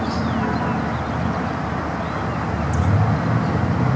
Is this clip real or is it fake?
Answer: real